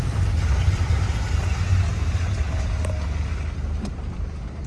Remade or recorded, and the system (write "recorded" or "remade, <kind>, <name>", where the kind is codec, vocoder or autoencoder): recorded